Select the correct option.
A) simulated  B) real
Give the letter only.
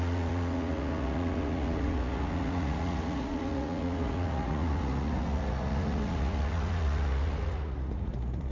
A